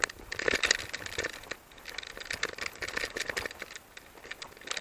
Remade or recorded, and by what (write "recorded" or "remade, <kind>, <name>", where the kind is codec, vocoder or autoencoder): recorded